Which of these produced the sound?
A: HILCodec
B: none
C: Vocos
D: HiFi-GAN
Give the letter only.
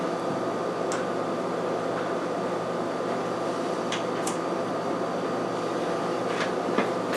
B